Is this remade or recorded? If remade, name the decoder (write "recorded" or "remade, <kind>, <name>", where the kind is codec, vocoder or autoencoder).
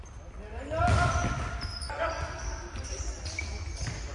recorded